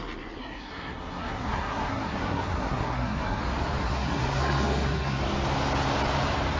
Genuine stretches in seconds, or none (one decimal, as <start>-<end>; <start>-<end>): 0.0-0.4; 3.4-3.8; 5.2-6.6